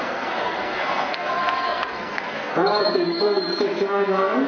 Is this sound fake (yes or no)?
yes